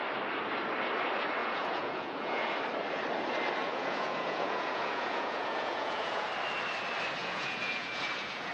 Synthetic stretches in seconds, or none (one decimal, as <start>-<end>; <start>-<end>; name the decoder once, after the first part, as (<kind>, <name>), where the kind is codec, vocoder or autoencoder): 1.4-2.6 (vocoder, Vocos); 3.6-6.3; 7.2-8.5

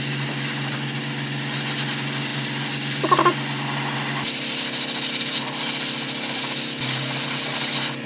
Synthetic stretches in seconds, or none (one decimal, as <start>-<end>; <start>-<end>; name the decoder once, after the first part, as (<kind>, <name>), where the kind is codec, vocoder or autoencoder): none